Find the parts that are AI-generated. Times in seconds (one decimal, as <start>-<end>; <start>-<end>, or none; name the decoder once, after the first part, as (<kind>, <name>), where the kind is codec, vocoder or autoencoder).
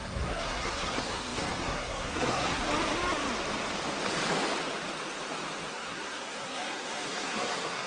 0.0-2.7 (codec, SNAC); 5.7-7.9